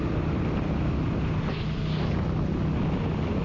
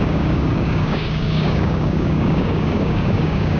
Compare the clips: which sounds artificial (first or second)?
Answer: second